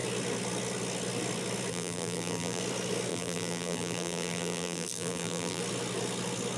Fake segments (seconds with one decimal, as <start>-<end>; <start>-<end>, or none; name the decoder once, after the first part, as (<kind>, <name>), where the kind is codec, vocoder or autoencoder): 1.7-2.6 (vocoder, BigVGAN v2); 3.1-5.6